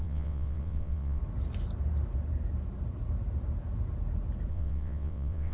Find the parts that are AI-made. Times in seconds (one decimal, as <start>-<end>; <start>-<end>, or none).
0.0-1.2; 4.5-5.5